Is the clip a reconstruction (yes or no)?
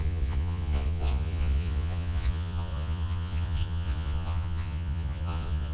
yes